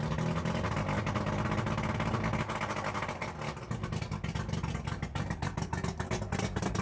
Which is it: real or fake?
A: real